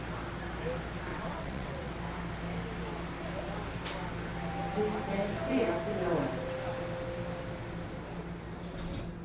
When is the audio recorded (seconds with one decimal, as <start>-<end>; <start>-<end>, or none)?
0.0-1.1; 1.9-9.2